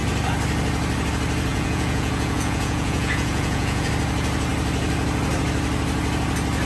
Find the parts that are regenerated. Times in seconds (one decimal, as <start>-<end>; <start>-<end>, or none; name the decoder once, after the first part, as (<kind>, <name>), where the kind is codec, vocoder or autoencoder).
1.5-3.9 (vocoder, Vocos)